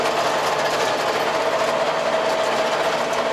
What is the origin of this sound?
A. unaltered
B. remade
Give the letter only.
A